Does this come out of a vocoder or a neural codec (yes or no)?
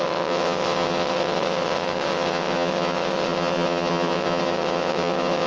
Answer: yes